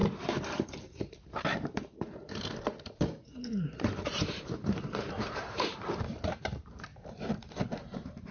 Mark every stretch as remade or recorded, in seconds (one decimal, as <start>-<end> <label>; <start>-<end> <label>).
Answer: 0.0-8.3 remade